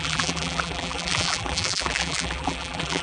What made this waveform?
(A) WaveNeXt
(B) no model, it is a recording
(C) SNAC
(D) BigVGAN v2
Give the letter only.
D